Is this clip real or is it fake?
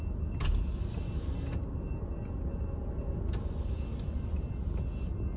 real